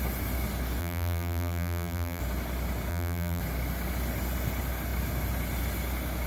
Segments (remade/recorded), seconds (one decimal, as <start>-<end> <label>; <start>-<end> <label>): 0.0-0.8 recorded; 0.8-2.2 remade; 2.2-2.9 recorded; 2.9-3.4 remade; 3.4-6.3 recorded